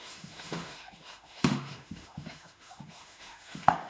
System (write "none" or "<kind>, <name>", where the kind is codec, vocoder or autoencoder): autoencoder, DAC-VAE